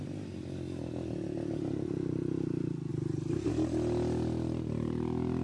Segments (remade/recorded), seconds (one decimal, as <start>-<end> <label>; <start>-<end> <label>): 0.0-5.4 recorded